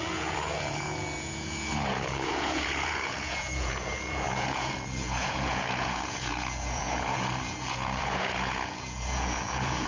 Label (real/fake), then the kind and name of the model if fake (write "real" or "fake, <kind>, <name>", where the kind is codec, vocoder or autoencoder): fake, vocoder, Vocos